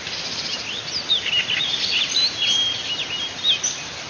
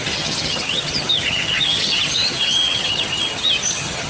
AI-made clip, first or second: second